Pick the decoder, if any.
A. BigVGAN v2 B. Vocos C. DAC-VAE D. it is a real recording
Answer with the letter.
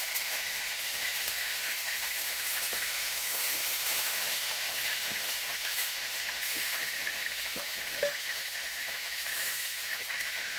C